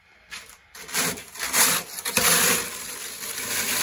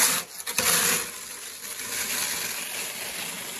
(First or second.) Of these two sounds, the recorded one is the second